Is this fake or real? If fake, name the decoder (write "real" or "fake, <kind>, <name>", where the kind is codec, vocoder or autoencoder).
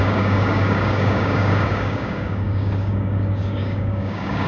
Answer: fake, codec, DAC